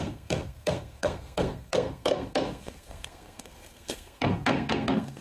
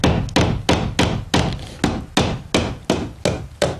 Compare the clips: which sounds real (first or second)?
second